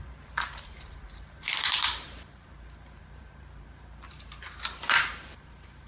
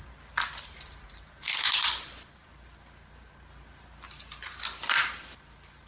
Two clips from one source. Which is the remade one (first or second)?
first